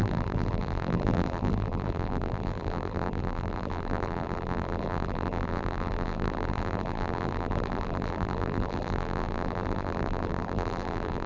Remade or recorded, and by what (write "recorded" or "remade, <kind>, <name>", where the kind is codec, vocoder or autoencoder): remade, vocoder, BigVGAN v2